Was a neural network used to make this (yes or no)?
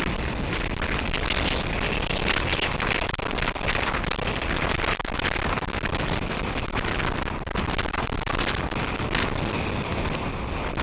no